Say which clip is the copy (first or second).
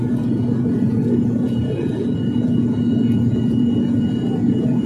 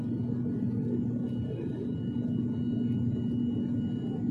first